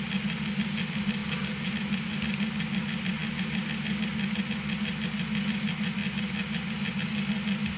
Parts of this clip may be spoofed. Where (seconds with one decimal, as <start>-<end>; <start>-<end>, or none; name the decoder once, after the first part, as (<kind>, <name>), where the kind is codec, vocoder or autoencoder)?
none